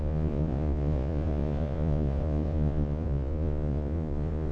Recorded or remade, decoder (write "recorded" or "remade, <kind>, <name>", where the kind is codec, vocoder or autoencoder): remade, vocoder, Vocos